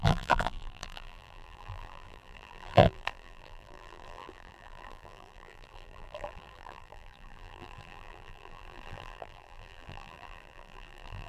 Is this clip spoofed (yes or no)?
yes